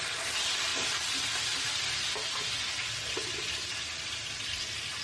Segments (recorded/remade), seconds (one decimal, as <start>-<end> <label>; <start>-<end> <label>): 0.0-5.0 recorded